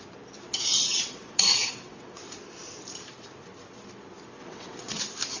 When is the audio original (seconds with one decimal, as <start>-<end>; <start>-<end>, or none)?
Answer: 0.0-0.8; 2.2-4.4; 5.0-5.4